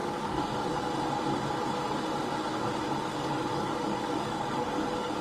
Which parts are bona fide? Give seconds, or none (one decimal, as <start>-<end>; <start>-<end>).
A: 0.8-3.1

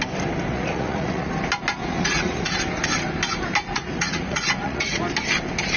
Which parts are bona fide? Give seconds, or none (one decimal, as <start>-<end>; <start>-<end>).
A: 0.0-0.5; 1.3-1.8; 2.5-3.7; 5.0-5.8

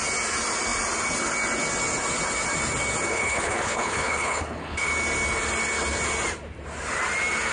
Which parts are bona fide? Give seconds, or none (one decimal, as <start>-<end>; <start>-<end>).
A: 0.0-3.1; 4.9-7.5

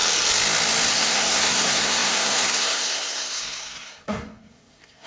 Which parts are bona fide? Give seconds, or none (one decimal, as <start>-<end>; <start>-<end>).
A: 0.0-0.9

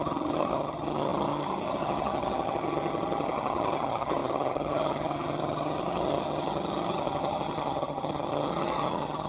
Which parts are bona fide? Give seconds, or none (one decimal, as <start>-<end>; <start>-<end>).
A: none

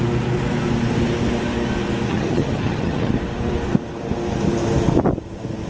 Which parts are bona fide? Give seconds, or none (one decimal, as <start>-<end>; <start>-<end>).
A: 0.0-2.1; 3.1-5.7